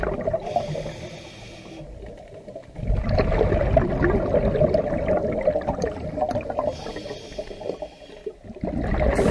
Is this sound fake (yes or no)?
no